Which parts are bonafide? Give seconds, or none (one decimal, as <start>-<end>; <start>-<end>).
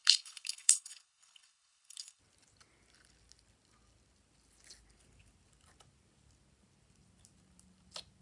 2.2-8.2